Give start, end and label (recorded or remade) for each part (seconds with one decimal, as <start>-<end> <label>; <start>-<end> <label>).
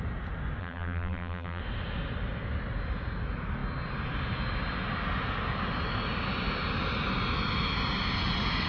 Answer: 0.0-0.6 recorded; 0.6-1.6 remade; 1.6-8.7 recorded